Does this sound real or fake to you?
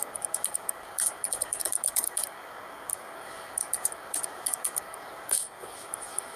fake